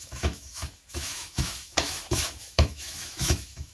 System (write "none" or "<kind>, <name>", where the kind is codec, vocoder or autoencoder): autoencoder, DAC-VAE